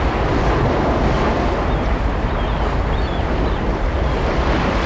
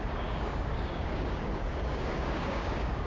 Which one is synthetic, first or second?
second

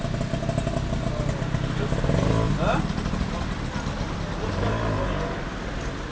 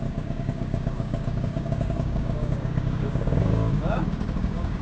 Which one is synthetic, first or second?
second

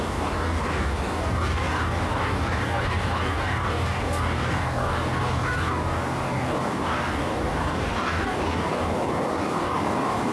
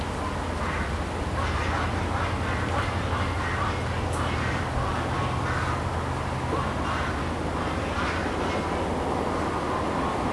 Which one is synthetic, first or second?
first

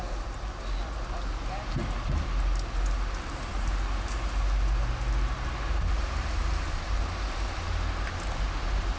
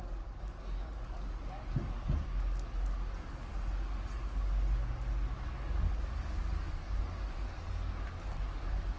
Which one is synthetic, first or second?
second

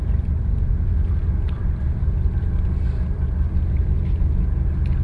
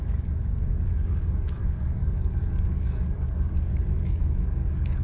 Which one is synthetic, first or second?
second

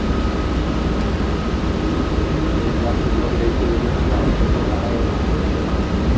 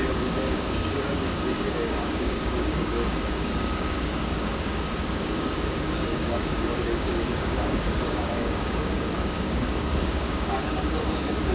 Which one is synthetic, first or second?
second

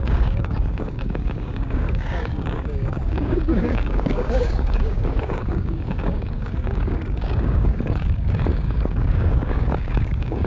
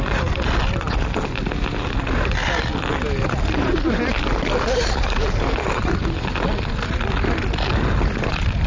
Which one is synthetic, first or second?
first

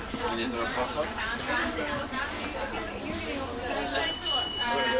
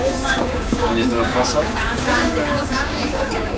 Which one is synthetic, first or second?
second